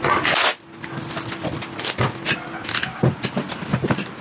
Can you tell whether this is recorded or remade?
recorded